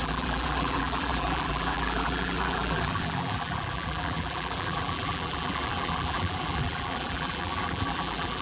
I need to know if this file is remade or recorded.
remade